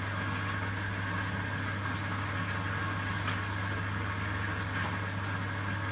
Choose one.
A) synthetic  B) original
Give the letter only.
B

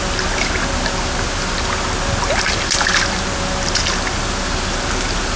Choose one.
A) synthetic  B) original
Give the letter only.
B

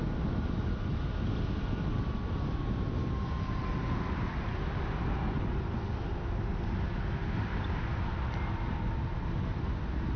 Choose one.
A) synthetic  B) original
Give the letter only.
B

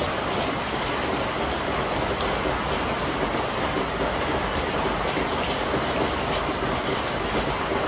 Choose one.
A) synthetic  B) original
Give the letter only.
B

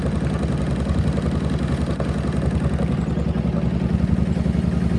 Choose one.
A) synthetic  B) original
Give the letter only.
B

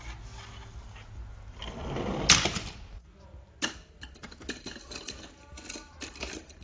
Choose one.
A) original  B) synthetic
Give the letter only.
A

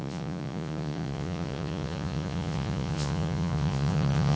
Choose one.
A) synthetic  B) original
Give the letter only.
A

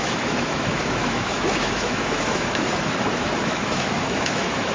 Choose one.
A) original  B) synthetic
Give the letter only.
B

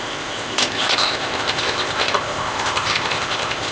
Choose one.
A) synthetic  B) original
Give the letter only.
A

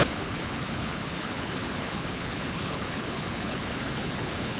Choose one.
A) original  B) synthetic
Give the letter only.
B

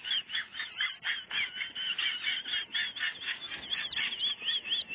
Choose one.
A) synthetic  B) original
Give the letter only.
B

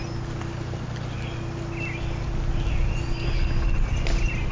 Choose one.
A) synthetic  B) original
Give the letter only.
B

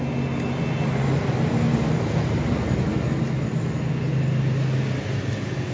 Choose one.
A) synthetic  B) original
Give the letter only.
B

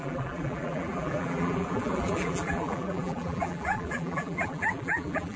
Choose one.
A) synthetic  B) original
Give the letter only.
A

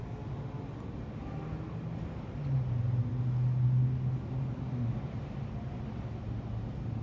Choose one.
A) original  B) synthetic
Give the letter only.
A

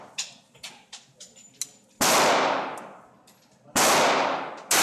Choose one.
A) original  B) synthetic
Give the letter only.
A